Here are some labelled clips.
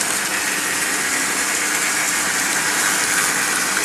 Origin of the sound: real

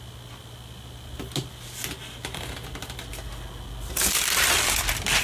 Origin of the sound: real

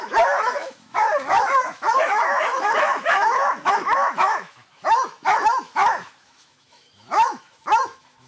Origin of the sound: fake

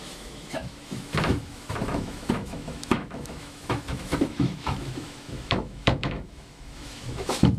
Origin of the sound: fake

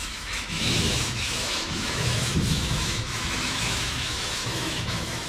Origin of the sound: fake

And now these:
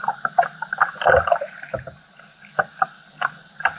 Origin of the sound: real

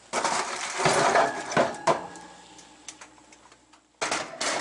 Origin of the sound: real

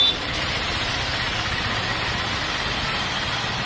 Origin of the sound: real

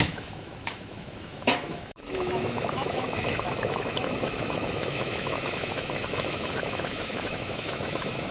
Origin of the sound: fake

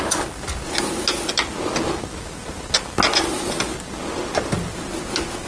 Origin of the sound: real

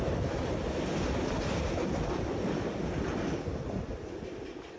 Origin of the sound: real